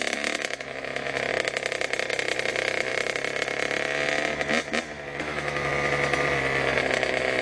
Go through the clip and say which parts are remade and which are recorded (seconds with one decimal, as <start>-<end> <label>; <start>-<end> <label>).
0.0-1.3 remade; 1.3-2.5 recorded; 2.5-2.9 remade; 2.9-5.2 recorded; 5.2-5.7 remade; 5.7-6.8 recorded; 6.8-7.4 remade